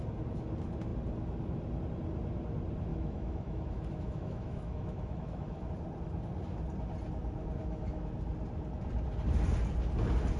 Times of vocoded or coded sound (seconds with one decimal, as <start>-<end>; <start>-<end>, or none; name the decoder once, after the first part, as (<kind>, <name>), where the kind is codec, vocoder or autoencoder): 2.9-5.7 (autoencoder, DAC-VAE); 7.6-8.1